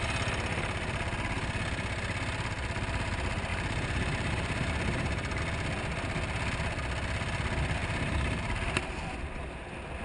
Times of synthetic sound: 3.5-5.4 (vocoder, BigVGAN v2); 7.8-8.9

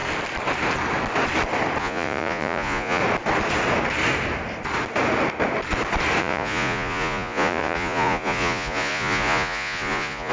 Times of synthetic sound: 1.8-3.0 (vocoder, Vocos); 6.2-10.3

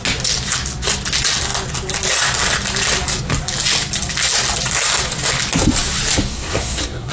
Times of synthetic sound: 6.3-7.1 (codec, SNAC)